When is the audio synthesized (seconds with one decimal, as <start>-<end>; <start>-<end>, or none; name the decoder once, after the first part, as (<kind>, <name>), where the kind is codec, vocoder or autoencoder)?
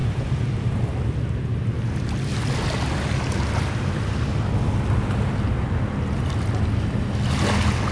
none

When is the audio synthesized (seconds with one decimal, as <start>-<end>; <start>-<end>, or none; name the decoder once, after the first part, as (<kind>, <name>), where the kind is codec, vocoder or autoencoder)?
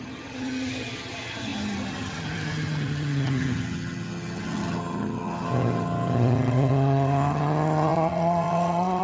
0.0-9.0 (vocoder, HiFi-GAN)